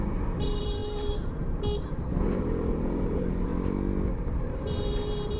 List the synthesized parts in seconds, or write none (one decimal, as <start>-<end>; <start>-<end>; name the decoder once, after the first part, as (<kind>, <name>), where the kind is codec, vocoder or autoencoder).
0.0-3.5 (vocoder, BigVGAN v2); 4.1-5.4